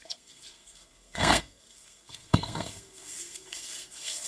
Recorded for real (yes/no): no